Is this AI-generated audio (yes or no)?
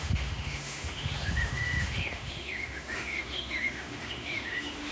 yes